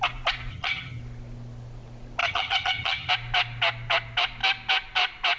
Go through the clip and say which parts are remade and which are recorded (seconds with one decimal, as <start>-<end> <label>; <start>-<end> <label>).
0.0-0.5 recorded; 0.5-1.0 remade; 1.0-2.2 recorded; 2.2-3.1 remade; 3.1-5.4 recorded